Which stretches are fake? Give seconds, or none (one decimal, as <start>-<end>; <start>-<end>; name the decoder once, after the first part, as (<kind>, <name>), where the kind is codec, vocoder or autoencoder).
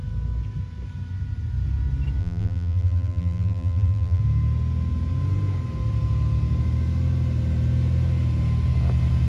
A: 2.2-4.2 (vocoder, BigVGAN v2)